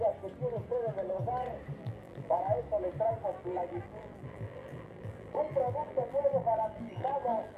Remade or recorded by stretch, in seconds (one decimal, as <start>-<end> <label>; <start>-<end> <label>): 0.0-1.8 recorded; 1.8-2.6 remade; 2.6-3.2 recorded; 3.2-7.6 remade